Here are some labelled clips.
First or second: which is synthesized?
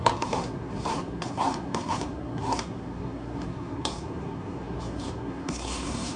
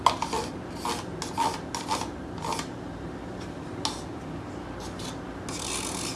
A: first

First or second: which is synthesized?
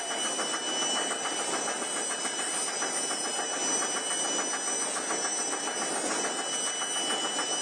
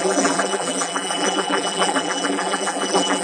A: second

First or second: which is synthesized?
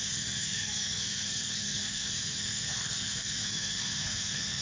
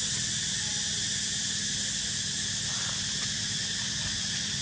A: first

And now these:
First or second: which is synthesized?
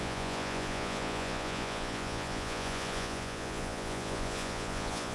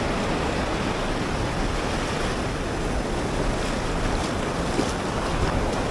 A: first